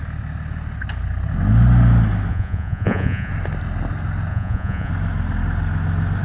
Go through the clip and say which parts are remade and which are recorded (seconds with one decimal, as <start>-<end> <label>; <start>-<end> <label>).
0.0-2.3 recorded; 2.3-3.3 remade; 3.3-4.3 recorded; 4.3-4.9 remade; 4.9-6.2 recorded